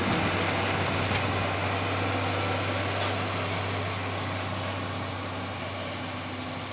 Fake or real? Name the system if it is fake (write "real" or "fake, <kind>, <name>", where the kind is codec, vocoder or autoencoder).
real